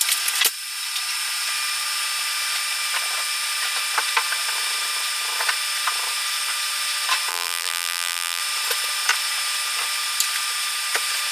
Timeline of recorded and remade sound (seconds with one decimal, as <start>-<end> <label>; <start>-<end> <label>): 0.0-7.3 recorded; 7.3-8.4 remade; 8.4-11.3 recorded